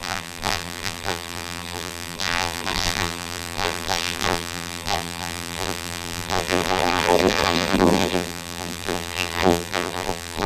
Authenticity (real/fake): fake